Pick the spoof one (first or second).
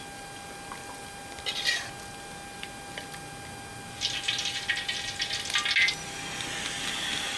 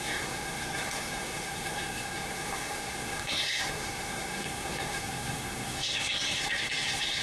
second